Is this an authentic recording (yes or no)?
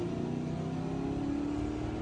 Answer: yes